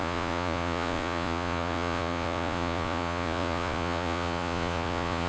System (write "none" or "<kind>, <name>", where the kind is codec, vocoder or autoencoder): vocoder, Vocos